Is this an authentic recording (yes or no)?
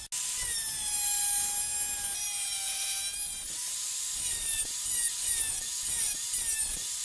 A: yes